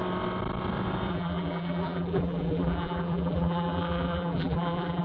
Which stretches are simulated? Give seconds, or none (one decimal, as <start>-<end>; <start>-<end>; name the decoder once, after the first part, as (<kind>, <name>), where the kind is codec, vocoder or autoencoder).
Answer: 1.1-5.0 (vocoder, BigVGAN v2)